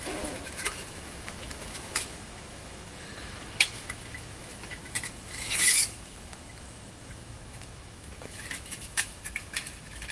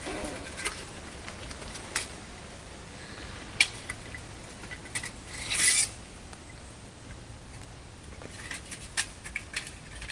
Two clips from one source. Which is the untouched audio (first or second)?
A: second